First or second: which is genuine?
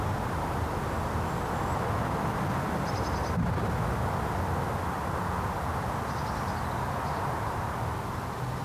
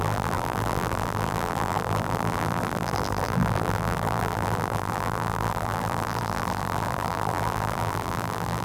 first